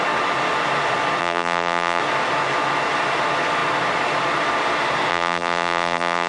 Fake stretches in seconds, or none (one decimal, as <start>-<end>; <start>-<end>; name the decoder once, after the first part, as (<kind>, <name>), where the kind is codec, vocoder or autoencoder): 1.2-2.0 (vocoder, BigVGAN v2); 5.1-6.3